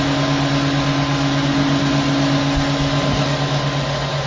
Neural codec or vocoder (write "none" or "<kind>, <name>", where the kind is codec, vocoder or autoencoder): none